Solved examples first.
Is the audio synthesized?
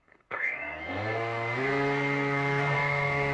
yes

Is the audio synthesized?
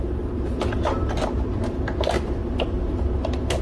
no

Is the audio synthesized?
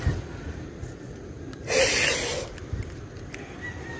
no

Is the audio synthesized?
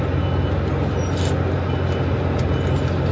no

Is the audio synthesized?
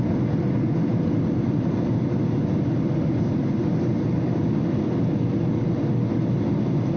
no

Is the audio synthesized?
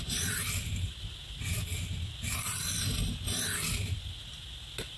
no